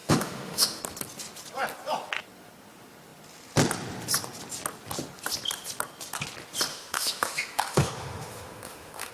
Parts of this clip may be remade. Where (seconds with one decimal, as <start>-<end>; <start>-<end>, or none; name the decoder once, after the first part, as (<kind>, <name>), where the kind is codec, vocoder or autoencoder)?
0.0-0.8 (autoencoder, DAC-VAE); 6.7-9.1